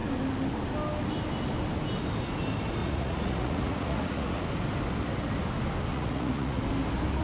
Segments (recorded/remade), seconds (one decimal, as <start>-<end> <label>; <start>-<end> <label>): 0.0-2.8 recorded; 2.8-4.4 remade; 4.4-5.9 recorded; 5.9-6.6 remade; 6.6-7.2 recorded